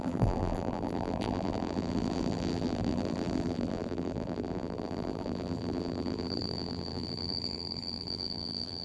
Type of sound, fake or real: fake